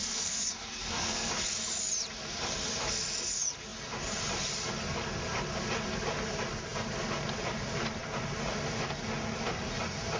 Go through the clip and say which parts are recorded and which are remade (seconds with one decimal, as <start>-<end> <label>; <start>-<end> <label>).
0.0-1.3 remade; 1.3-10.2 recorded